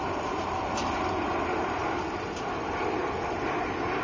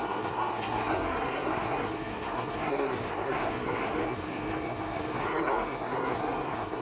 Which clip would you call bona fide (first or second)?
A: first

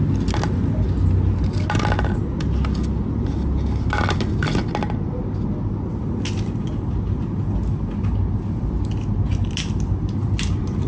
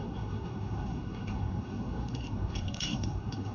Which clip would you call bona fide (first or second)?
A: first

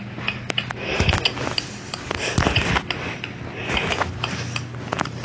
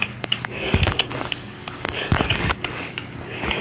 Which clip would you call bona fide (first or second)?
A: first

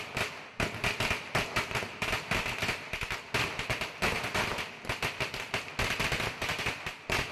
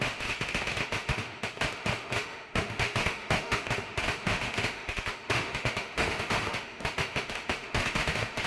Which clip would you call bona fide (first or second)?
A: first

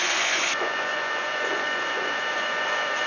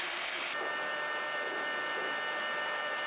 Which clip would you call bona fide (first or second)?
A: second